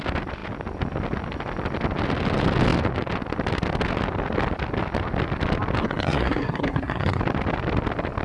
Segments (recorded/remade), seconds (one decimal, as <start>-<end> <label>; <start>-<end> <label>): 0.0-5.8 recorded; 5.8-7.2 remade; 7.2-8.2 recorded